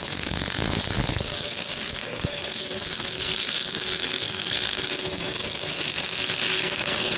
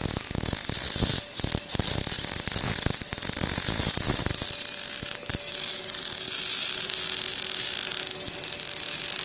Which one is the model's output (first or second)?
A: first